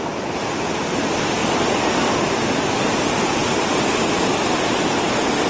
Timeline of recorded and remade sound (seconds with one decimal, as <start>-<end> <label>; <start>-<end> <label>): 0.0-1.4 recorded; 1.4-2.1 remade; 2.1-5.5 recorded